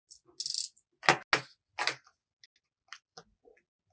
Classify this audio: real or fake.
real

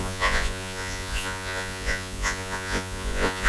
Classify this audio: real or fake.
fake